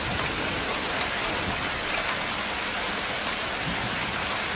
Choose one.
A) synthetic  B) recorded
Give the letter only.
B